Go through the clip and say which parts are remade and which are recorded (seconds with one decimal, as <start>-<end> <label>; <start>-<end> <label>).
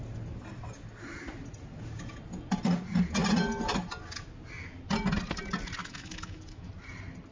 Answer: 0.0-5.8 recorded; 5.8-6.7 remade; 6.7-7.3 recorded